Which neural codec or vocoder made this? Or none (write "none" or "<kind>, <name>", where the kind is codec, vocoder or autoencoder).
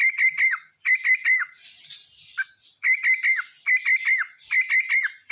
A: none